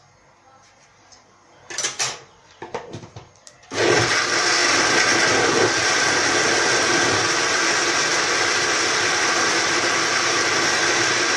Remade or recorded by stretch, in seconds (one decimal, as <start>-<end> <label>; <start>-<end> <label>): 0.0-11.4 recorded